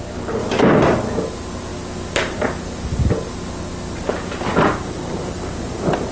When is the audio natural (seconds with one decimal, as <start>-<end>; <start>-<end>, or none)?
0.0-6.1